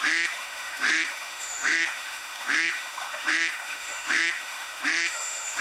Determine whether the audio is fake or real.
fake